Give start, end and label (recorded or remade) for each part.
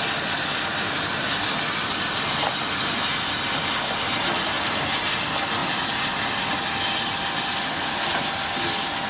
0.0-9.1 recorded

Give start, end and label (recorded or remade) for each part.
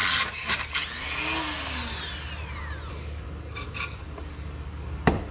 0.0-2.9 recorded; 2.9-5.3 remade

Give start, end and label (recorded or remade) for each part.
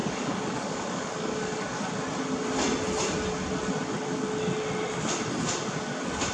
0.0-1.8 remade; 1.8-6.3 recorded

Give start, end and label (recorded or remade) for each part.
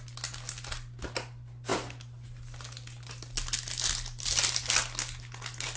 0.0-5.8 recorded